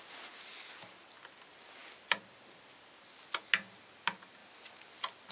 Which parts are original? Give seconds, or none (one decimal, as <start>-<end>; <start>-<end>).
0.0-5.3